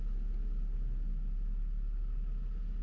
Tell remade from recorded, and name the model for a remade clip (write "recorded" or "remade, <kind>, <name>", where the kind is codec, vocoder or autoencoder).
recorded